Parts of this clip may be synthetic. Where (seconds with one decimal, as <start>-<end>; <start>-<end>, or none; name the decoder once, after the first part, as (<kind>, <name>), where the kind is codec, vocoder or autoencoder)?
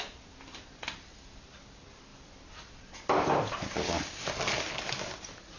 none